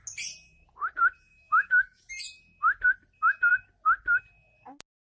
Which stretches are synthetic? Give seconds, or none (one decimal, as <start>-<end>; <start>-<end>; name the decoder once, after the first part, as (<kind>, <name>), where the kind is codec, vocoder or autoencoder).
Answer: 1.3-2.1 (autoencoder, DAC-VAE)